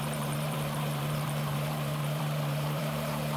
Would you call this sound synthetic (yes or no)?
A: yes